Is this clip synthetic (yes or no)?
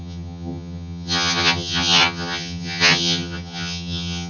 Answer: yes